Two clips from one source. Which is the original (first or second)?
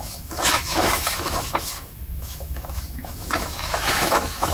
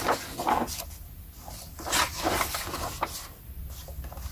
second